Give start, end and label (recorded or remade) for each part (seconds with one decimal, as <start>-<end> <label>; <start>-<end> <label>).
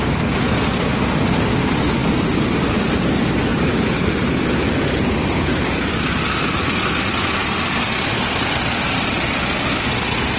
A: 0.0-3.5 recorded; 3.5-5.0 remade; 5.0-10.4 recorded